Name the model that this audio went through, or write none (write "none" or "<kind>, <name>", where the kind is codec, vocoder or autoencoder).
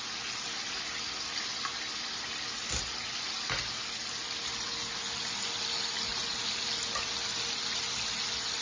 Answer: none